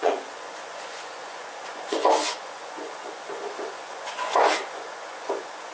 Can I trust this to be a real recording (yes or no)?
no